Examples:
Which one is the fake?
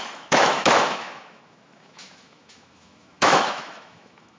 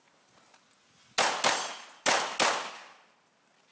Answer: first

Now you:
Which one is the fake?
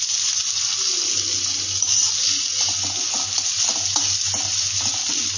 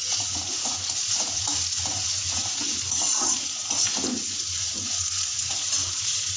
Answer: second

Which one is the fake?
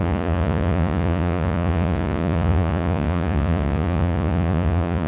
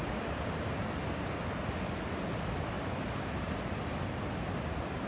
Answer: first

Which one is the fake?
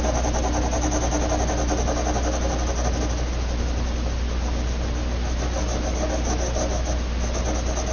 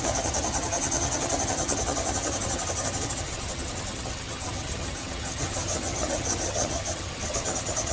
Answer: second